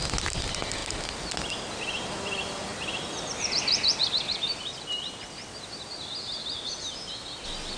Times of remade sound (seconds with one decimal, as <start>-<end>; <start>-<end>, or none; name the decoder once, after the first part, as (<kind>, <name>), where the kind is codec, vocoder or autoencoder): none